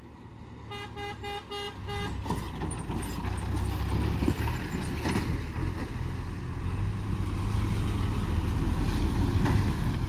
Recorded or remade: recorded